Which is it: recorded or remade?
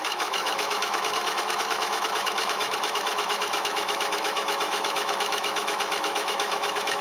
remade